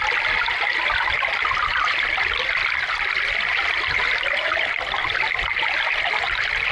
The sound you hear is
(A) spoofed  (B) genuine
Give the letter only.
B